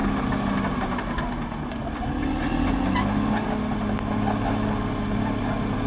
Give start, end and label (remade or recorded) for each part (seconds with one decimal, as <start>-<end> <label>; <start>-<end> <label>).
0.0-5.9 recorded